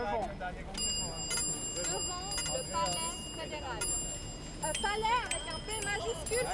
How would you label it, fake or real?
real